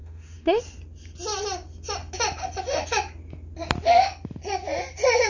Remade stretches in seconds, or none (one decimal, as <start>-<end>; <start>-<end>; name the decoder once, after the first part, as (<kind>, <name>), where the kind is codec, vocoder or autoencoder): 0.0-0.6 (autoencoder, DAC-VAE)